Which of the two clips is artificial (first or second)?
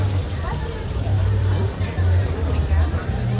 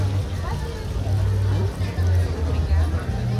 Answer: first